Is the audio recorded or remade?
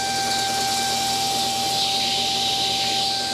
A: recorded